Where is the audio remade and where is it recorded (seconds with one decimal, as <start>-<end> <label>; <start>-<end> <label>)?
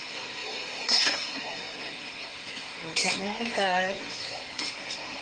0.0-5.2 remade